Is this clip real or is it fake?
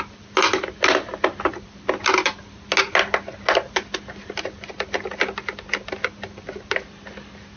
real